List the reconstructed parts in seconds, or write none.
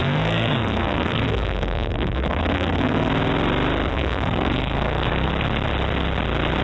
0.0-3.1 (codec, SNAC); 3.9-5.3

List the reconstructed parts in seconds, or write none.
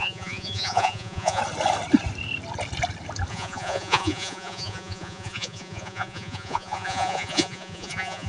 0.0-1.4 (vocoder, Vocos); 3.3-8.3